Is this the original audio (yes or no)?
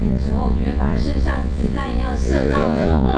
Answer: no